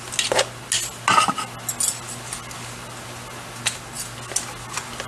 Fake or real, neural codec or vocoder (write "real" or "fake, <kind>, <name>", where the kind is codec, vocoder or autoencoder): real